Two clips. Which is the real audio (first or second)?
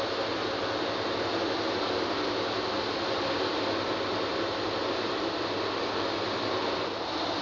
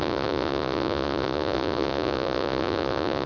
first